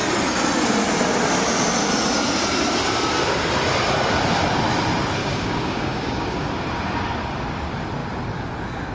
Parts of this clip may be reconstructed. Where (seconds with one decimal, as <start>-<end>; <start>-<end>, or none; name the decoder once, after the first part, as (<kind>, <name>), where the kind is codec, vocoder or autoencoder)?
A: 5.2-6.5 (codec, DAC)